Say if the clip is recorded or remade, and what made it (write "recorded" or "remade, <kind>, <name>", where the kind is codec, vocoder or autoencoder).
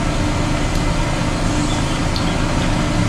recorded